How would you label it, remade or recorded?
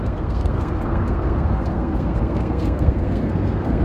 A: remade